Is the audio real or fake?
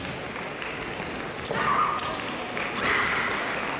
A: real